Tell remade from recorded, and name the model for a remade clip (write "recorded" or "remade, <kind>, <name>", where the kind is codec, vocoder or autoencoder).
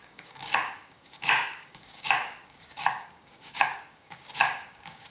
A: remade, codec, DAC